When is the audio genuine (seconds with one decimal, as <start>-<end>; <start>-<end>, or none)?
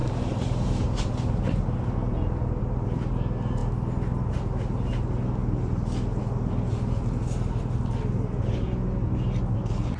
0.0-10.0